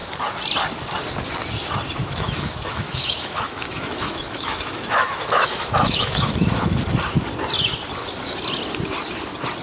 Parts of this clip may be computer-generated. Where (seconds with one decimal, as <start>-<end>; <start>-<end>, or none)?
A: 2.0-6.8